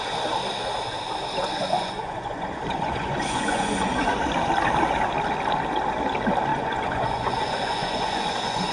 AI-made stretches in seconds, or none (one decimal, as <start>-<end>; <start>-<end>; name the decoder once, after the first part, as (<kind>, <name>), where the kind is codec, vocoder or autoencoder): 1.4-4.2 (vocoder, Vocos); 6.5-8.7